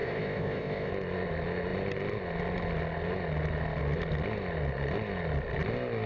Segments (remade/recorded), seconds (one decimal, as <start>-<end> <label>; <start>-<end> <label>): 0.0-0.9 remade; 0.9-6.1 recorded